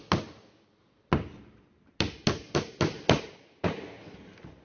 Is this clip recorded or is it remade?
recorded